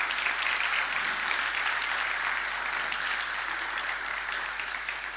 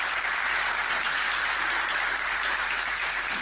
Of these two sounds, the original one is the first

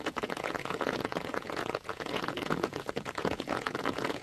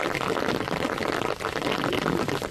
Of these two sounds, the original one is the second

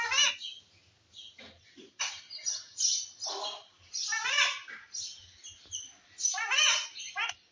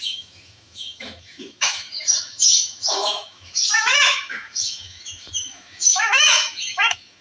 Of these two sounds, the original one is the first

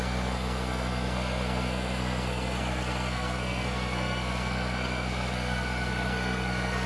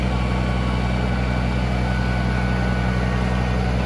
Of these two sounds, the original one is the second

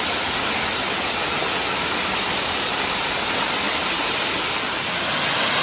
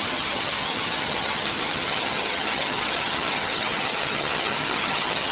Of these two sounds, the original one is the first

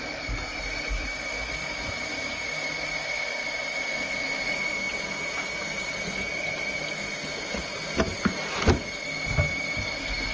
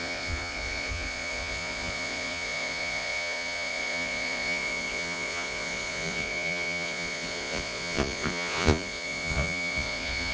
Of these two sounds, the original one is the first